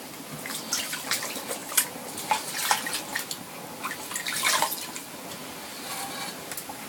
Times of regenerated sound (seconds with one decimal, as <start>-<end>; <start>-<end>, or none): 1.6-3.3